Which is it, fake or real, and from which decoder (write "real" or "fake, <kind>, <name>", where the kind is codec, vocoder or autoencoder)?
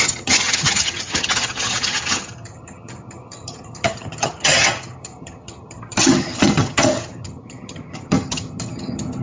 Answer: fake, vocoder, HiFi-GAN